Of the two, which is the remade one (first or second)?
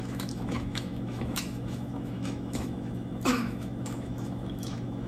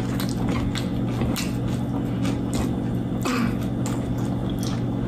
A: first